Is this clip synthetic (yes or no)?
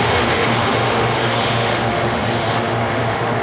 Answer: yes